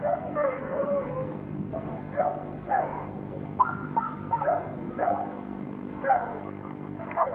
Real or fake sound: fake